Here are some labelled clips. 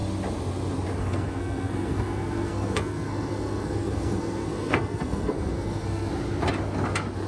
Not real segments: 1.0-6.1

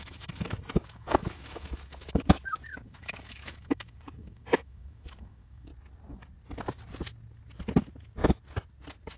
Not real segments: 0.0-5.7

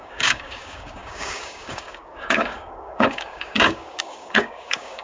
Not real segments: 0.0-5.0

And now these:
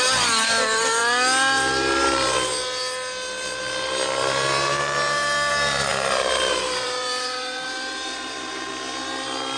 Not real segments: 5.9-8.7

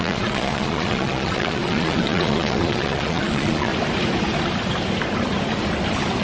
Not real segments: 0.0-3.7

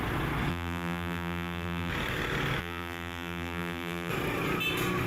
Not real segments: 0.5-1.9; 2.6-4.1

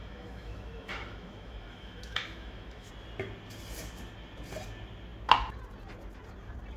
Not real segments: 0.0-2.9

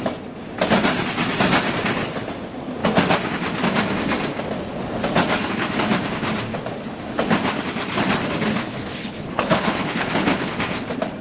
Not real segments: 8.5-10.1